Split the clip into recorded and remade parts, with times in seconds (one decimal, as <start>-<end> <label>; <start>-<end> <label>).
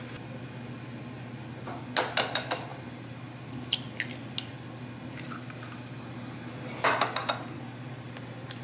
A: 0.0-8.6 recorded